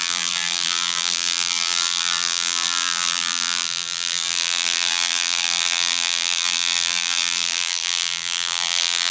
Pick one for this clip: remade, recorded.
remade